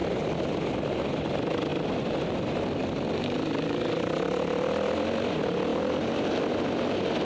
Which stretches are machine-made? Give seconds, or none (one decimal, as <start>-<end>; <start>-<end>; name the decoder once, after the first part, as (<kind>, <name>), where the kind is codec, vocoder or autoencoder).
0.0-1.2 (vocoder, BigVGAN v2); 1.7-2.6; 5.7-6.2